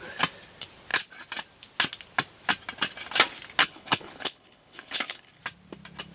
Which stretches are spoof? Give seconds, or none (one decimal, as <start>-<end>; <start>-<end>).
3.6-5.4